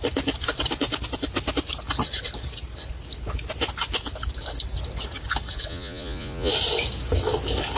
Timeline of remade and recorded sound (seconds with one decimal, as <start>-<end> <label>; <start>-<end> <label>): 0.0-5.7 recorded; 5.7-6.5 remade; 6.5-7.8 recorded